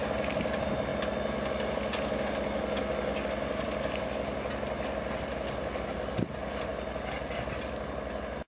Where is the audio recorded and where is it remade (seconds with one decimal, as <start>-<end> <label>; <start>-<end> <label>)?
0.0-8.5 recorded